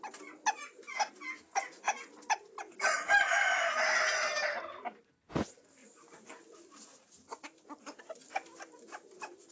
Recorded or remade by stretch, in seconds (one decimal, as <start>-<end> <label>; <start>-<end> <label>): 0.0-9.5 recorded